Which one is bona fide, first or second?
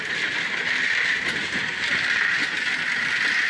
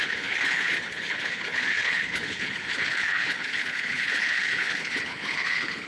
first